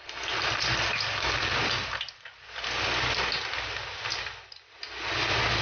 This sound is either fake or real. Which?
real